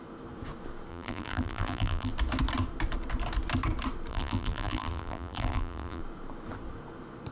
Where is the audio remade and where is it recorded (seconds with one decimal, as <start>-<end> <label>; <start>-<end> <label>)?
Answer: 0.0-0.9 recorded; 0.9-2.1 remade; 2.1-4.1 recorded; 4.1-6.0 remade; 6.0-7.3 recorded